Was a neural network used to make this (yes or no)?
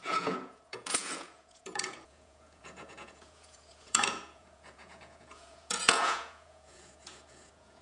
yes